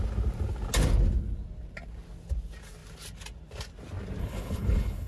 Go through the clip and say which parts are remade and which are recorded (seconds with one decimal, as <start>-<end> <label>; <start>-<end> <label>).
0.0-4.2 recorded; 4.2-5.1 remade